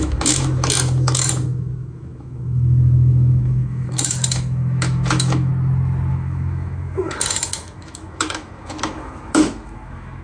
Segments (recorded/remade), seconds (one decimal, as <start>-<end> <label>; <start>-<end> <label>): 0.0-5.5 remade; 5.5-6.1 recorded; 6.1-10.2 remade

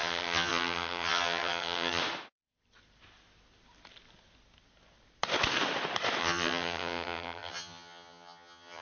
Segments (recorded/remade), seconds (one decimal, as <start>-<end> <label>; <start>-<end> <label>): 0.0-2.0 remade; 2.0-6.2 recorded; 6.2-8.8 remade

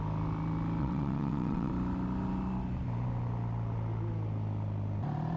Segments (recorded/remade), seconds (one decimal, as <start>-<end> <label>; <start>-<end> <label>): 0.0-0.8 recorded; 0.8-1.7 remade; 1.7-5.4 recorded

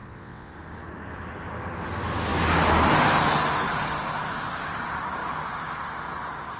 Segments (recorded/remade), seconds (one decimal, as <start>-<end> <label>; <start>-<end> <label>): 0.0-0.5 remade; 0.5-6.6 recorded

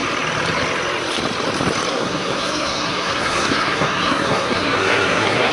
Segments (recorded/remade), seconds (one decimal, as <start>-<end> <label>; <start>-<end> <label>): 0.0-1.9 recorded; 1.9-5.5 remade

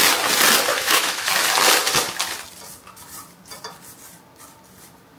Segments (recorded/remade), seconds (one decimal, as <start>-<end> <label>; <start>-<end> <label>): 0.0-0.7 recorded; 0.7-1.3 remade; 1.3-5.2 recorded